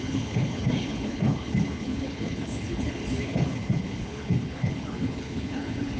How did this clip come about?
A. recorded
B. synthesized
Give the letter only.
B